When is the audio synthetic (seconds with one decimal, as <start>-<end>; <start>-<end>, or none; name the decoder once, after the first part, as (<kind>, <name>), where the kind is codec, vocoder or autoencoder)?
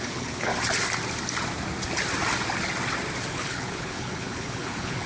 0.0-0.5 (codec, HILCodec); 3.3-5.1